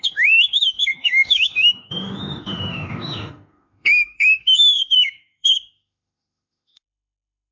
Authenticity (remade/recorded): remade